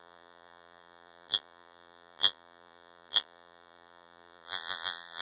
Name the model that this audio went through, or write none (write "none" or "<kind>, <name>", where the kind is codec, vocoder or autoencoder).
vocoder, BigVGAN v2